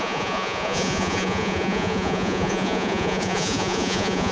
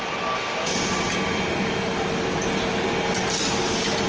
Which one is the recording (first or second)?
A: second